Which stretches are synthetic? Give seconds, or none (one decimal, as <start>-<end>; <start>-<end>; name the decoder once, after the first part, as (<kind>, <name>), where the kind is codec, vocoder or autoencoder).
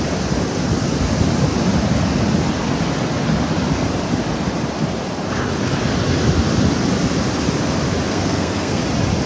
8.1-8.8 (codec, SNAC)